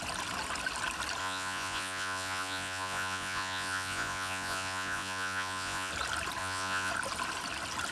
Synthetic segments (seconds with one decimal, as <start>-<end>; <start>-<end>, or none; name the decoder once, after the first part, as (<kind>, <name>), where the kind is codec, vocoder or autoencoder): 1.2-5.9 (vocoder, Vocos); 6.4-6.9